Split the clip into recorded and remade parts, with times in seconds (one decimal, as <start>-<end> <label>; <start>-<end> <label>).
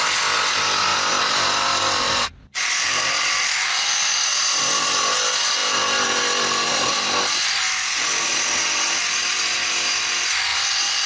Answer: 0.0-0.9 recorded; 0.9-4.6 remade; 4.6-10.5 recorded; 10.5-11.1 remade